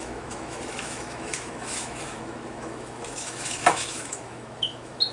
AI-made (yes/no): yes